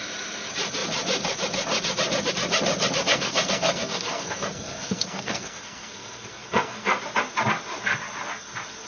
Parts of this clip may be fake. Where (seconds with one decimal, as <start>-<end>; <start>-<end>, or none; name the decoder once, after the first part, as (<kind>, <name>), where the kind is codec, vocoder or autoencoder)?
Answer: 3.1-7.0 (codec, SNAC)